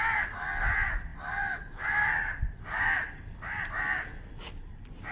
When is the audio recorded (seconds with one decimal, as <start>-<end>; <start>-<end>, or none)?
0.0-1.1; 3.6-5.1